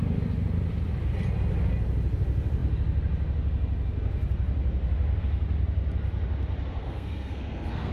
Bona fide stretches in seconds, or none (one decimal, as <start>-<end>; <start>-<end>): 0.0-6.8